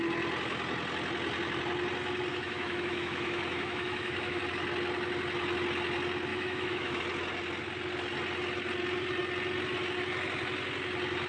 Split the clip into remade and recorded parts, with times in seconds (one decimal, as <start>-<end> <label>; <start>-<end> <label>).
0.0-2.3 recorded; 2.3-4.4 remade; 4.4-6.3 recorded; 6.3-7.0 remade; 7.0-11.3 recorded